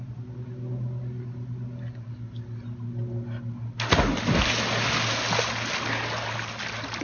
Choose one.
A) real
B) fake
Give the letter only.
A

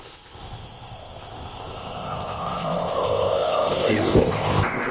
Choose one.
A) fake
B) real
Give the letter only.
A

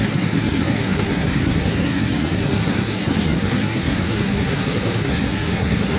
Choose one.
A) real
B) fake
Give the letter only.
B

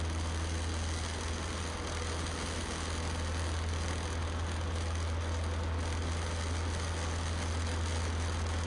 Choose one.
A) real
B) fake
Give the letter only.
A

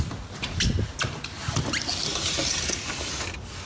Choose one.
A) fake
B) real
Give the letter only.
B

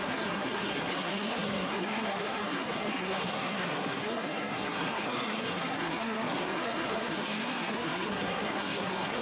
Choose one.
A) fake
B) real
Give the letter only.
A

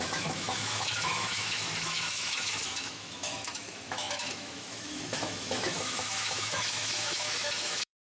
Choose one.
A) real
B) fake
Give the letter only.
B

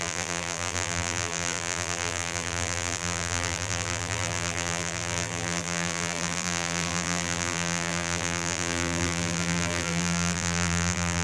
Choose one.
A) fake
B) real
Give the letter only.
A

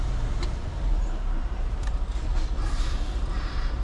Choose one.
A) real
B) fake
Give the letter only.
B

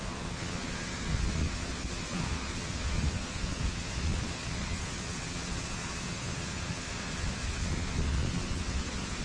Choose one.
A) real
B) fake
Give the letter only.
B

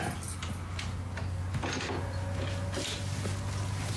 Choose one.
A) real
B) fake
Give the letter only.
A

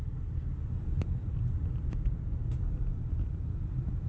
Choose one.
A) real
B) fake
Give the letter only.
A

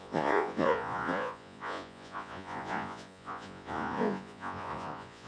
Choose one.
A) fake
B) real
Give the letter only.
A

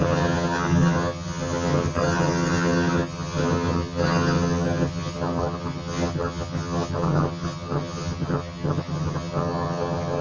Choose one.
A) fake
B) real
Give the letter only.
A